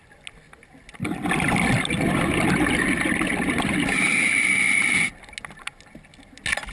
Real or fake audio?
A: real